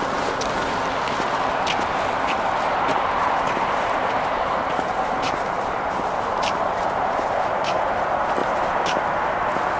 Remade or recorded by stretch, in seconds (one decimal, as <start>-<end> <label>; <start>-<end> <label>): 0.0-2.9 recorded; 2.9-8.0 remade; 8.0-8.4 recorded; 8.4-9.0 remade; 9.0-9.8 recorded